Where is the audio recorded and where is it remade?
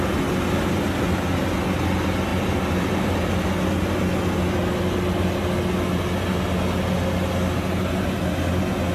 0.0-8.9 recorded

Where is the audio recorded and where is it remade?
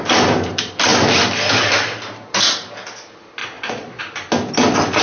0.0-3.4 recorded; 3.4-4.0 remade; 4.0-5.0 recorded